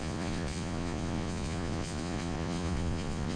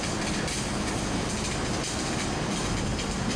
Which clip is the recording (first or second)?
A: second